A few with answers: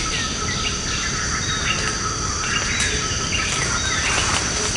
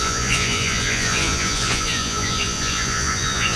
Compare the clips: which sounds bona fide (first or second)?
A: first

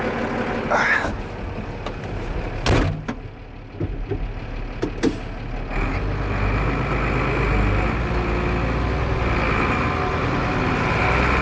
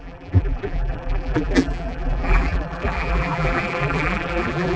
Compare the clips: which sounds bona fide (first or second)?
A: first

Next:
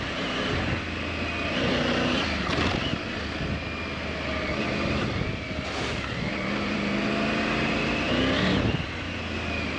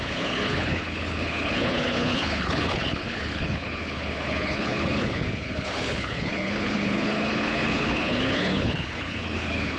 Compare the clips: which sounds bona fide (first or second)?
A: first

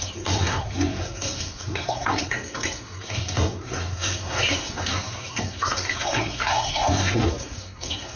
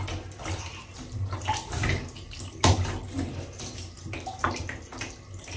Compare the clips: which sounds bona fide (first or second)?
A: second